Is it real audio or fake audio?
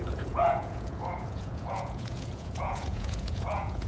fake